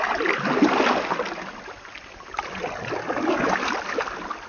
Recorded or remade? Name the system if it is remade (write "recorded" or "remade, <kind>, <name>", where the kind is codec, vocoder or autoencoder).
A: recorded